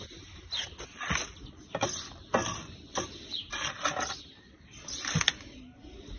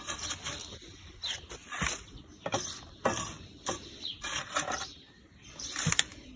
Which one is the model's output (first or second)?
second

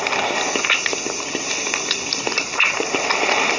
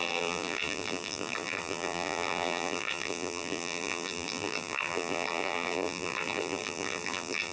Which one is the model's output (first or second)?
second